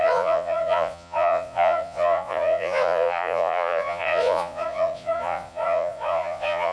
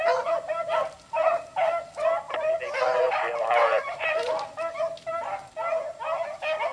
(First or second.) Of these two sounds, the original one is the second